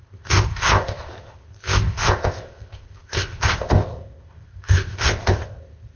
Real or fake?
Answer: fake